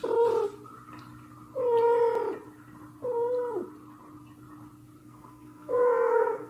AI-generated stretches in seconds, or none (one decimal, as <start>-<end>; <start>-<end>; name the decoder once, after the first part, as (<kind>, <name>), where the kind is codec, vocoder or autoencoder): 5.0-6.5 (codec, SNAC)